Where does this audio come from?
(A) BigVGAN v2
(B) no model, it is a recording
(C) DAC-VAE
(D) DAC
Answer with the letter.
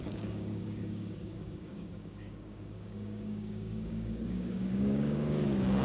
D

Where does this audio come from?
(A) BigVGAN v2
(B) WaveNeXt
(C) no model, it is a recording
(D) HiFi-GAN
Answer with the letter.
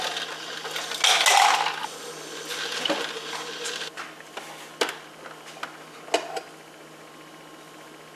C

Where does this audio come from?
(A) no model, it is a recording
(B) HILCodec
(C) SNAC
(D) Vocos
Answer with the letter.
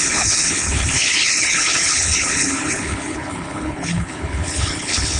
B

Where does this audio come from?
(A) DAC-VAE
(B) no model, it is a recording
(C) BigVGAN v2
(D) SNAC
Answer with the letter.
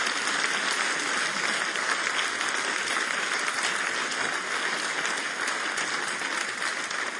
B